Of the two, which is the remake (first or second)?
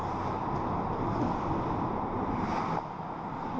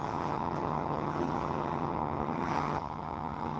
second